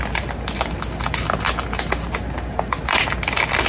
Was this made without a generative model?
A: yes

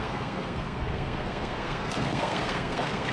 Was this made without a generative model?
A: no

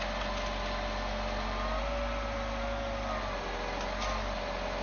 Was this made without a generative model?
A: yes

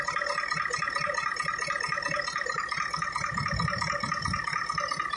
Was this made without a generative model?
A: yes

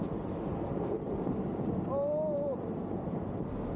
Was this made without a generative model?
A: yes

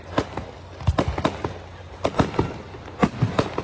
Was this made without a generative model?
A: yes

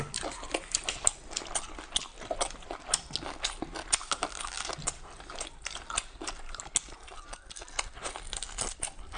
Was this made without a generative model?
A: yes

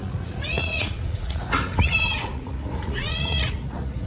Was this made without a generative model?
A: no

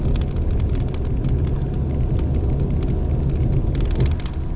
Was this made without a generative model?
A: yes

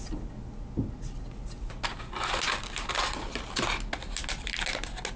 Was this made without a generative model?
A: yes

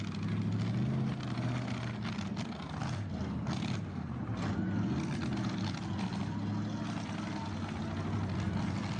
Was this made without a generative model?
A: yes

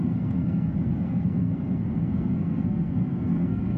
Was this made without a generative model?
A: no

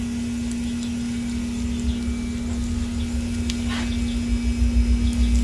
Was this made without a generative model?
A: yes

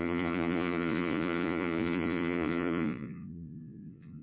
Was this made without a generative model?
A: no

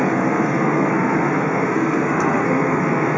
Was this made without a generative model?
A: no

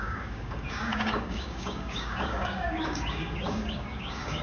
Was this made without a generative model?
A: no